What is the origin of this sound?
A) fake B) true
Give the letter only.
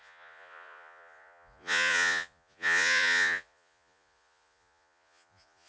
A